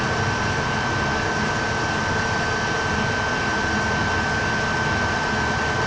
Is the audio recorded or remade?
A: recorded